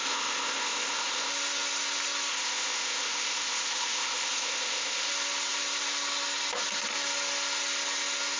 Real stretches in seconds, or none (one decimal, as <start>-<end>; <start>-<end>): 1.3-2.3; 5.1-8.4

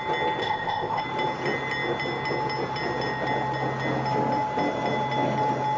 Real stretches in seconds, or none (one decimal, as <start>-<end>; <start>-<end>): 0.0-0.4; 1.0-5.8

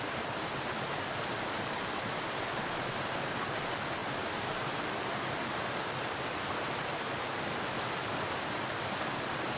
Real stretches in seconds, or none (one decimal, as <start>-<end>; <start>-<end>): 0.0-9.6

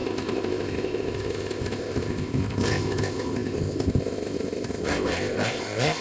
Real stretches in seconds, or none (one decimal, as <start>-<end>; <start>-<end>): none

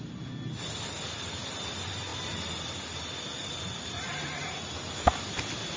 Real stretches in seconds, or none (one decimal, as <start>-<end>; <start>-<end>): 0.0-5.8

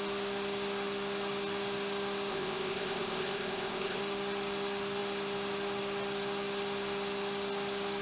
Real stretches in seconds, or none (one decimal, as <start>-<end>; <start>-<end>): 0.0-2.3; 4.0-8.0

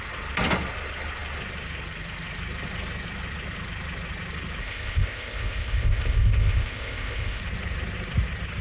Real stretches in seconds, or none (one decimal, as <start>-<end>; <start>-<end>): 0.0-4.6; 7.4-8.6